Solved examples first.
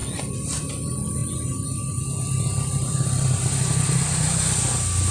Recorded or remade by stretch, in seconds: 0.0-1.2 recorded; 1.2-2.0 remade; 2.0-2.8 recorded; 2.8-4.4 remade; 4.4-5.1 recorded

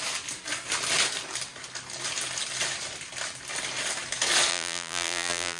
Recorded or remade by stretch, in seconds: 0.0-4.5 recorded; 4.5-5.6 remade